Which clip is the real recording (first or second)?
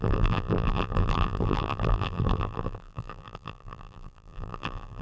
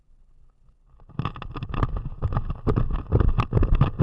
second